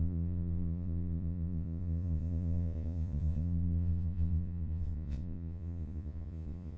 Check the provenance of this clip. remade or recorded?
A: remade